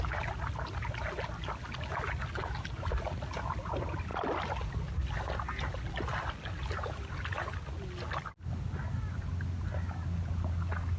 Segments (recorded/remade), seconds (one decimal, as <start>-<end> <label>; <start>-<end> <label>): 0.0-11.0 recorded